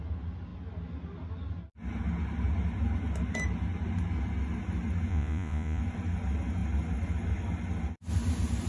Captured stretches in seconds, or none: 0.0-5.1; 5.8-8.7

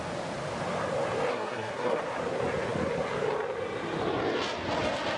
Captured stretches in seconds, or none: 0.0-1.3; 2.0-5.2

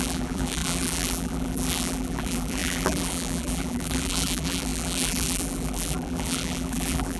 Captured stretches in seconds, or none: none

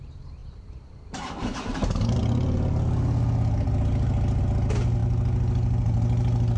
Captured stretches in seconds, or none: 0.0-6.6